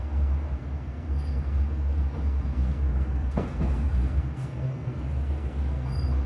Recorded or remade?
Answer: remade